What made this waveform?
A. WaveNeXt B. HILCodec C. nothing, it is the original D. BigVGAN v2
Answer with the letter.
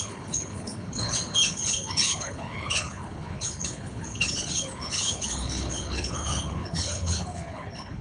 B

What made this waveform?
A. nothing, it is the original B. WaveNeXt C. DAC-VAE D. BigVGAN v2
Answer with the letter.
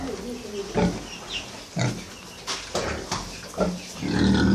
A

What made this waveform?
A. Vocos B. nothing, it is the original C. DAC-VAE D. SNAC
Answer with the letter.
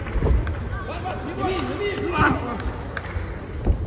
B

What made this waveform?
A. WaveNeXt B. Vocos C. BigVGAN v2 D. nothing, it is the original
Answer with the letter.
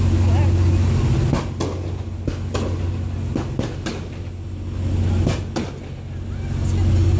D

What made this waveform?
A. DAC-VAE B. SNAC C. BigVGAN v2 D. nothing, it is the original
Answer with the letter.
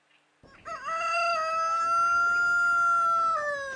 D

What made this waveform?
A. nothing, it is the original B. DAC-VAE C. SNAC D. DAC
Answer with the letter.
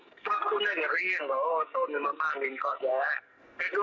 C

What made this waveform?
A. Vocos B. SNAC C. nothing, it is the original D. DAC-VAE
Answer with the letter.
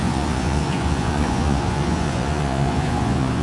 A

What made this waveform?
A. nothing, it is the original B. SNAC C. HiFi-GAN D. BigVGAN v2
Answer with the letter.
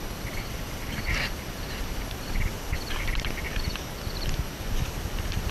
A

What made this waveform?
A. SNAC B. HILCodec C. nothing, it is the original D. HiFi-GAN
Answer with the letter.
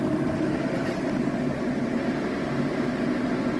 C